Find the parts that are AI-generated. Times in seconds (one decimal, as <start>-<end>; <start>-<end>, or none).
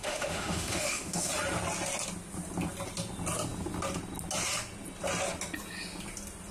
0.0-1.3